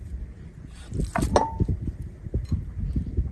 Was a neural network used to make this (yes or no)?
no